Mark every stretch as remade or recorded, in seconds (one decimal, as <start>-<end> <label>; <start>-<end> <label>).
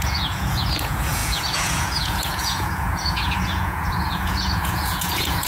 0.0-5.5 remade